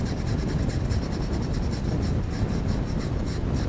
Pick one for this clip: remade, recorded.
recorded